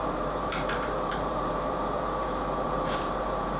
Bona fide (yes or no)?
no